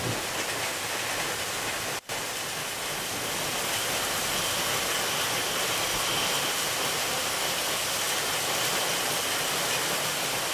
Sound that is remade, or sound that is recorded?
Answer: recorded